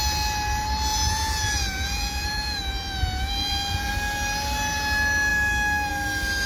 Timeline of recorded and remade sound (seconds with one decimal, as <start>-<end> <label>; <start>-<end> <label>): 0.0-0.9 recorded; 0.9-3.9 remade; 3.9-6.5 recorded